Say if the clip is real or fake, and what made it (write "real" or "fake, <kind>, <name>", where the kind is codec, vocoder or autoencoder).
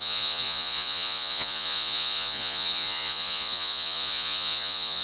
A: fake, vocoder, Vocos